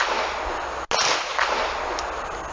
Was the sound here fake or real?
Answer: real